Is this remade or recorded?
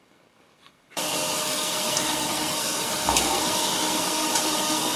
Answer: remade